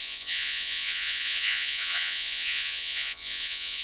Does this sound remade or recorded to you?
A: remade